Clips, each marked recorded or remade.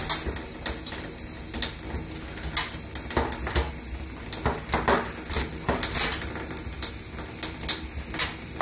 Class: recorded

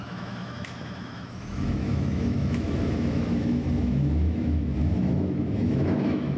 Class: remade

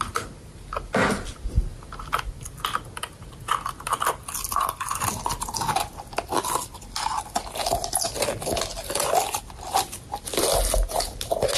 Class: recorded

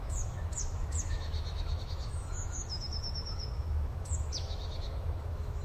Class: remade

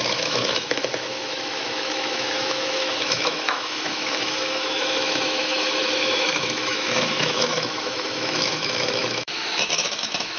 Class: remade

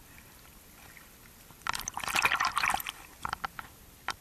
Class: recorded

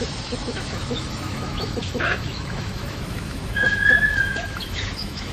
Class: remade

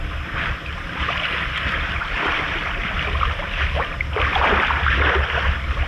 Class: recorded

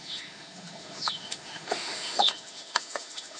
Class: remade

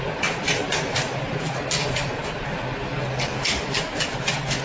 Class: recorded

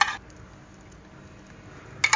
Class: recorded